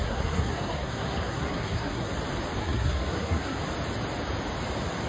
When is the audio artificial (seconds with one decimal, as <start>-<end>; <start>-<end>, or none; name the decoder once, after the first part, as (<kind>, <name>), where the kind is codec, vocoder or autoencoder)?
0.0-2.1 (codec, SNAC); 2.6-3.6